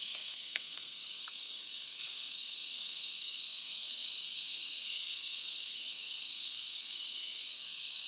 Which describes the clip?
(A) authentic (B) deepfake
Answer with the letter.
B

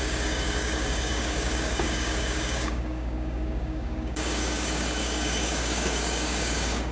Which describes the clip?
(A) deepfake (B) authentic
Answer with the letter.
A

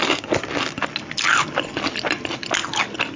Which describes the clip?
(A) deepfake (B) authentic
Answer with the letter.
B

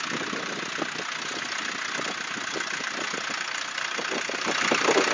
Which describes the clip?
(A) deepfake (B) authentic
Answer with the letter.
B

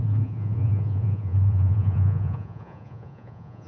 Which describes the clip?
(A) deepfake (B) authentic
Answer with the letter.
A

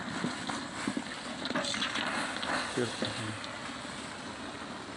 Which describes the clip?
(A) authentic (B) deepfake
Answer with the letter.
A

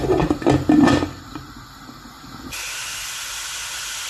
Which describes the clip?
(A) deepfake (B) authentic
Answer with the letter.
B